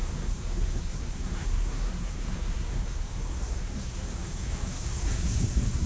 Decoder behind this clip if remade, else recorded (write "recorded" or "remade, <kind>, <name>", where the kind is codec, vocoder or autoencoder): remade, codec, SNAC